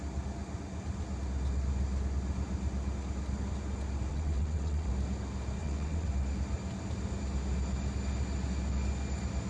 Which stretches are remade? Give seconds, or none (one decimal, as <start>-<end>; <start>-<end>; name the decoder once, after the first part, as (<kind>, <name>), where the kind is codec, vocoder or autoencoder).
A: 4.1-4.9 (vocoder, WaveNeXt); 5.6-6.1